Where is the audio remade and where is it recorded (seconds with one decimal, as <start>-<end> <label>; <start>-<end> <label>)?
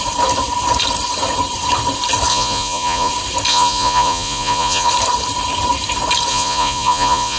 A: 0.0-2.3 recorded; 2.3-3.1 remade; 3.1-3.5 recorded; 3.5-4.9 remade; 4.9-6.3 recorded; 6.3-7.4 remade